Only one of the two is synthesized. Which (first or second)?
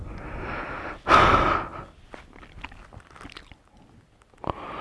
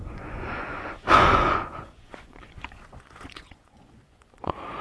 second